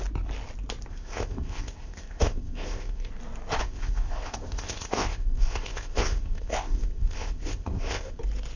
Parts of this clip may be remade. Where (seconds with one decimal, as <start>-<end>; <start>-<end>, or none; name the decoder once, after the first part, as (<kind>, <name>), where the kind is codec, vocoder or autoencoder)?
0.9-3.1 (codec, ZipCodec); 3.6-8.2